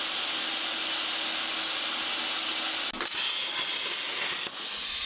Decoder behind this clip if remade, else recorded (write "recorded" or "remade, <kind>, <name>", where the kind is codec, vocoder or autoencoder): recorded